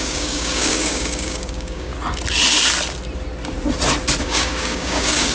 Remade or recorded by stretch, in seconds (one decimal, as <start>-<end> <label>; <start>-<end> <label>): 0.0-1.9 remade; 1.9-4.2 recorded; 4.2-5.3 remade